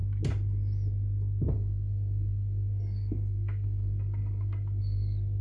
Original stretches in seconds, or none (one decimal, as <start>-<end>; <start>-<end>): 0.0-1.5